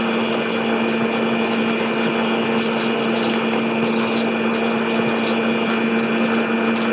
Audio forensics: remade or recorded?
recorded